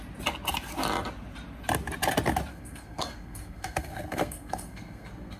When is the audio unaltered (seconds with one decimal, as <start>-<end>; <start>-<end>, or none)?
0.0-2.5